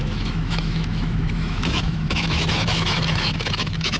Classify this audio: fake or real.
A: fake